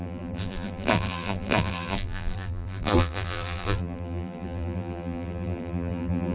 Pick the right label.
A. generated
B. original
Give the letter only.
A